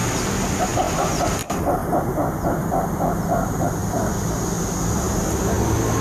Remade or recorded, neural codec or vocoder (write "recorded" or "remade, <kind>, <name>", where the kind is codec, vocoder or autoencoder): recorded